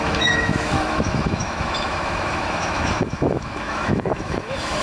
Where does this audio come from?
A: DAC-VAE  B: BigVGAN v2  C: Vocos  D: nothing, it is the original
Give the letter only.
A